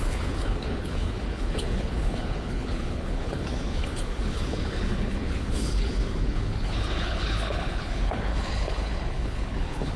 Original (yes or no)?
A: no